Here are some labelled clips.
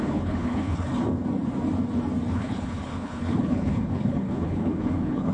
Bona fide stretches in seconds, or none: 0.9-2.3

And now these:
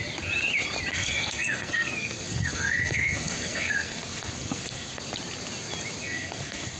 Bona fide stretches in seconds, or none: 0.0-0.9; 5.0-6.0

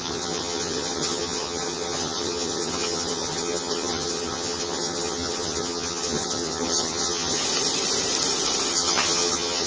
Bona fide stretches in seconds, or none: 7.4-8.7

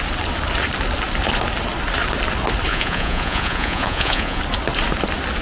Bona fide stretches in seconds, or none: 0.0-2.7; 4.4-5.4

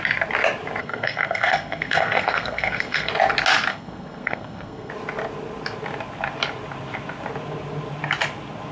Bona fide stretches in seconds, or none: 0.0-0.8; 3.1-3.7; 4.9-8.7

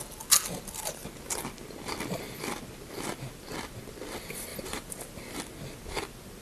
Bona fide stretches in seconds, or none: 0.0-4.5; 5.4-6.4

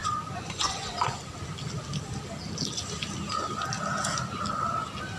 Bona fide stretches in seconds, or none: 1.2-5.2